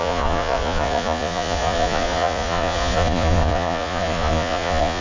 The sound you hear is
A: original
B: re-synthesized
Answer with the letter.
B